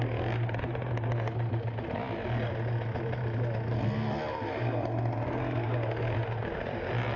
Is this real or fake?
real